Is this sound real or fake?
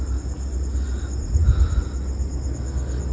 real